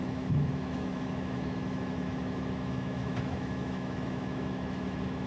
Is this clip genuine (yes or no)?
no